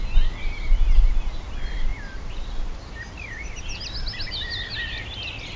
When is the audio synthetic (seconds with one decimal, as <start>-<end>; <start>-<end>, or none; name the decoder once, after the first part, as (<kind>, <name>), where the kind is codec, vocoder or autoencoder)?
none